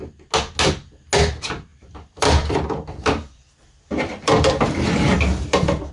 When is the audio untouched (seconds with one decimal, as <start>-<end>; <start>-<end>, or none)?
0.0-1.7; 5.2-5.9